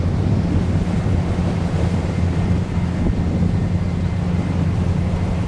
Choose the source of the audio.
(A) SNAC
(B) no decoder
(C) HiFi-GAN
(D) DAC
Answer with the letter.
B